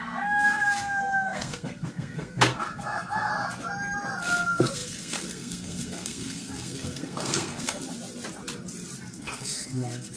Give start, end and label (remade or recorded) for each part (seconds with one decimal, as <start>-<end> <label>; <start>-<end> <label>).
0.0-3.3 remade; 3.3-4.2 recorded; 4.2-7.8 remade; 7.8-9.1 recorded; 9.1-10.2 remade